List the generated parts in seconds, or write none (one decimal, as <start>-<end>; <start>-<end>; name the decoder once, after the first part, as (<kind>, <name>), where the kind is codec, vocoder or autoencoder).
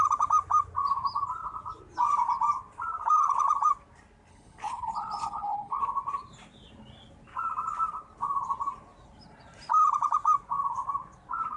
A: 4.3-5.8 (codec, HILCodec)